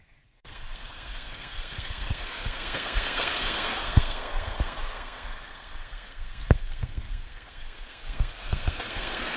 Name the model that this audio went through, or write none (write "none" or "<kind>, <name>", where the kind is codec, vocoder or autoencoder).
codec, SNAC